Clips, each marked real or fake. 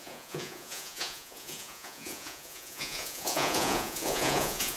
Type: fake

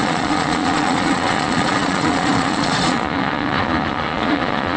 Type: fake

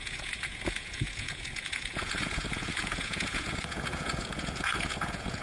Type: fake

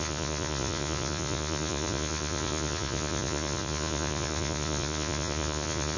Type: fake